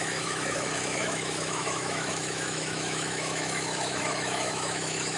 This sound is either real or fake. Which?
fake